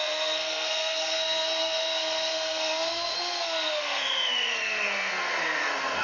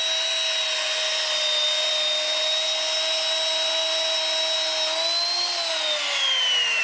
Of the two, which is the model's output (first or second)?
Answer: first